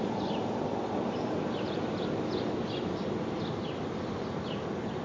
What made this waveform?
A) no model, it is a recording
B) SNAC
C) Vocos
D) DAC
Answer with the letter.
A